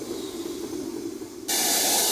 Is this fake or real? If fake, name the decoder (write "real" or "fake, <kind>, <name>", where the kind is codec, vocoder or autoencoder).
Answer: real